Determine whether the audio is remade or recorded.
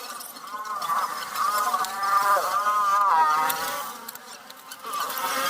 recorded